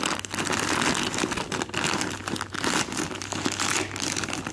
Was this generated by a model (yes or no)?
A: no